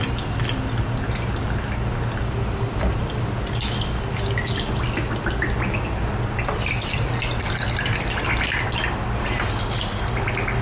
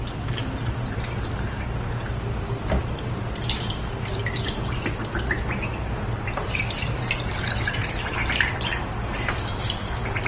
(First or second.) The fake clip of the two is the second